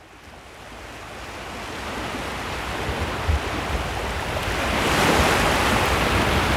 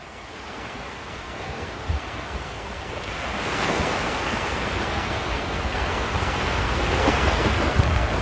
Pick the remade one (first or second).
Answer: second